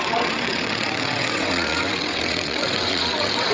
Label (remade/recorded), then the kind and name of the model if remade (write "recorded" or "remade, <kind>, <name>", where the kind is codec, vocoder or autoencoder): remade, vocoder, WaveNeXt